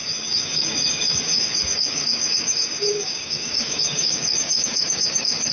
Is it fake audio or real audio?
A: fake